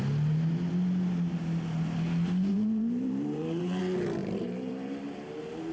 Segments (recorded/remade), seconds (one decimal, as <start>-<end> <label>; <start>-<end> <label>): 0.0-2.5 recorded; 2.5-3.8 remade; 3.8-4.2 recorded; 4.2-4.7 remade; 4.7-5.7 recorded